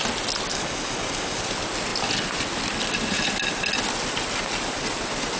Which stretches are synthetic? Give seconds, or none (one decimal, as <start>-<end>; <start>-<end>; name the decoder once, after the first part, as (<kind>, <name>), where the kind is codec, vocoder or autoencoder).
0.5-1.4 (codec, DAC)